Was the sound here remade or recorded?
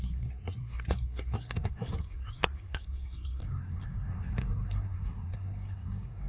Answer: remade